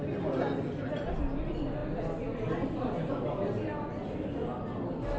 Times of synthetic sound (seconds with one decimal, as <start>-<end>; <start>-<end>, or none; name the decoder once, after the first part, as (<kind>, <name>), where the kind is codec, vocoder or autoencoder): none